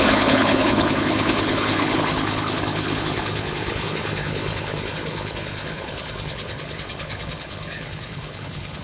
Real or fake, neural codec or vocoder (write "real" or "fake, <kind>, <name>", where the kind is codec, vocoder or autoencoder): fake, codec, HILCodec